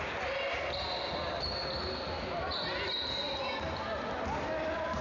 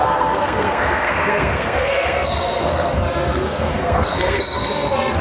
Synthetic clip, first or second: second